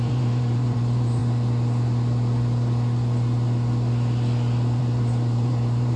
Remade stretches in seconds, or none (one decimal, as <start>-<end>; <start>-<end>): 0.0-1.2; 4.8-6.0